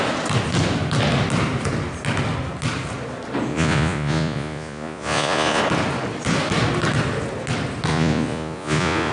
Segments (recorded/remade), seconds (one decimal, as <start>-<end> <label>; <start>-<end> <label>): 0.0-3.5 recorded; 3.5-5.6 remade; 5.6-7.9 recorded; 7.9-9.1 remade